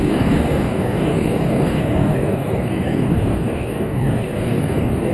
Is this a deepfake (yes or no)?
yes